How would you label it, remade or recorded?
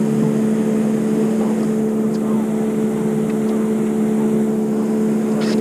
recorded